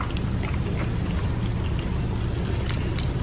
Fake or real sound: real